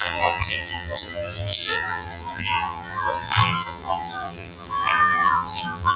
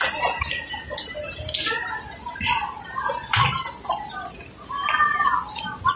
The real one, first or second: second